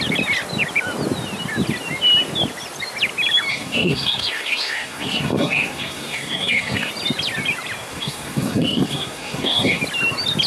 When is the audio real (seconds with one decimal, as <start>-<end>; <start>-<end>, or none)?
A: 0.0-3.5; 6.9-7.9; 9.8-10.5